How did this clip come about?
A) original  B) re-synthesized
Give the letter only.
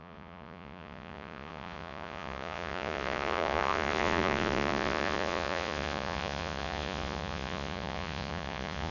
B